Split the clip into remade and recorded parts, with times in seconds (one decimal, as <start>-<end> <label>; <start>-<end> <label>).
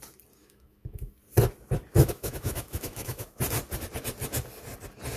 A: 0.0-0.4 recorded; 0.4-1.1 remade; 1.1-1.9 recorded; 1.9-3.4 remade; 3.4-5.2 recorded